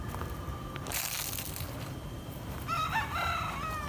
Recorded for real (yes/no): yes